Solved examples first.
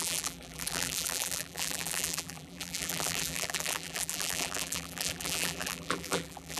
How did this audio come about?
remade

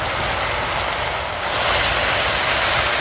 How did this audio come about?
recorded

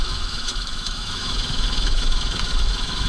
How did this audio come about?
remade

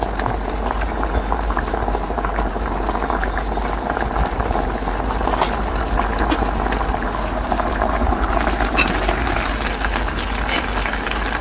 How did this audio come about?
recorded